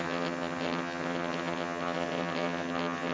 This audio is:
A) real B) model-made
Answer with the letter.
B